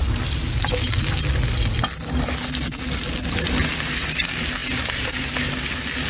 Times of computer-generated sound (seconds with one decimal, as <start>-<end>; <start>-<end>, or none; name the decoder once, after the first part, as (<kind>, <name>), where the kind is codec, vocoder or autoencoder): none